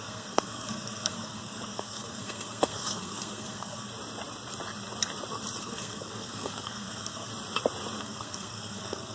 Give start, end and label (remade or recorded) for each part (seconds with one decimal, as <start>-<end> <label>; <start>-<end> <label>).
0.0-3.9 remade; 3.9-5.6 recorded; 5.6-7.3 remade; 7.3-8.0 recorded; 8.0-9.1 remade